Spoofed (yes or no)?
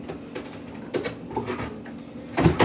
no